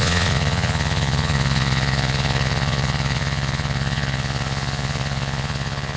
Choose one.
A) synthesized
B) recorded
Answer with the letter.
A